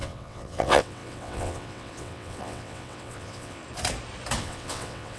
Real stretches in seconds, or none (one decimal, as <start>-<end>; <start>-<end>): 3.6-4.4